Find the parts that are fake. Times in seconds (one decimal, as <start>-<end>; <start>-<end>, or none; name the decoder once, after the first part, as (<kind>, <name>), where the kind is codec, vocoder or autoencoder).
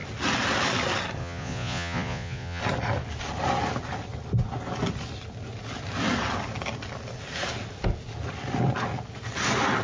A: 1.2-2.6 (vocoder, Vocos)